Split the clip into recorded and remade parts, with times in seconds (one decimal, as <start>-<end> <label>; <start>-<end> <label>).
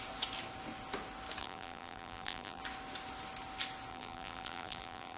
0.0-1.4 recorded; 1.4-2.6 remade; 2.6-3.9 recorded; 3.9-5.2 remade